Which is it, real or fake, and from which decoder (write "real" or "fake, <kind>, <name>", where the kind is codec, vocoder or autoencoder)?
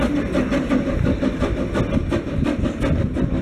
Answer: real